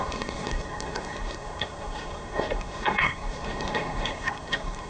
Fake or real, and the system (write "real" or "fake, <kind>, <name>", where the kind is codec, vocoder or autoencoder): fake, codec, SNAC